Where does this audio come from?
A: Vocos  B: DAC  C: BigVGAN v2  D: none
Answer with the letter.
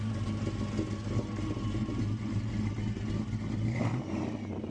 D